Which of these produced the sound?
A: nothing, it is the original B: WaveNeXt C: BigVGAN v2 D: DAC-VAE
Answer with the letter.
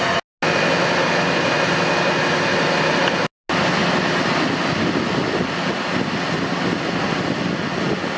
A